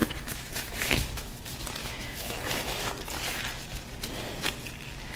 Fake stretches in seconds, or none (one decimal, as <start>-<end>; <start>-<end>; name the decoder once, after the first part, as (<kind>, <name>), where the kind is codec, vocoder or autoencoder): 0.0-1.4 (autoencoder, DAC-VAE); 1.8-2.9